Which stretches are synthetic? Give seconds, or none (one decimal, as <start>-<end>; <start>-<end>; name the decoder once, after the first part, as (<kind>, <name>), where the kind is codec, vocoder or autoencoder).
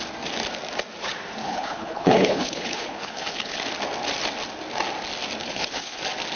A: 1.4-3.6 (codec, HILCodec); 5.4-6.0